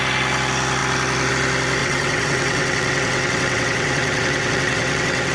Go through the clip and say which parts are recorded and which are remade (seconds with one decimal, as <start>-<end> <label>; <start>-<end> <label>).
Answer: 0.0-1.8 recorded; 1.8-5.3 remade